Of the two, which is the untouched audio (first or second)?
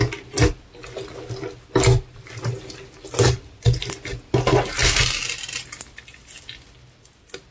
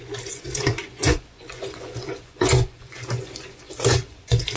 first